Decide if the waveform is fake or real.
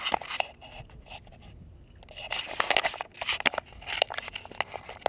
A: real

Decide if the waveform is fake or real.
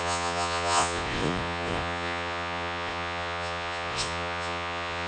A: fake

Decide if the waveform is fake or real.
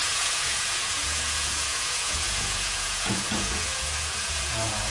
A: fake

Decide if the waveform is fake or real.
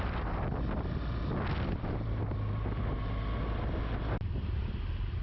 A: real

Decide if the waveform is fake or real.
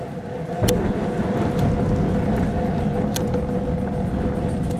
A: real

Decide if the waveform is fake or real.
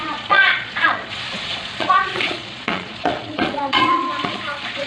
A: fake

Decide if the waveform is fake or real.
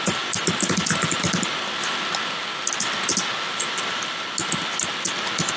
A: real